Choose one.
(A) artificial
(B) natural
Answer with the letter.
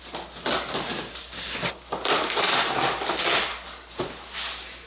B